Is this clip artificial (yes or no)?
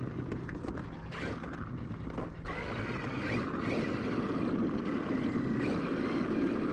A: no